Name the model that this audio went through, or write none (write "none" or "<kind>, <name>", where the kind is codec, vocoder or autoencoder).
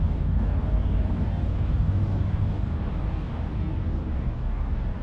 codec, DAC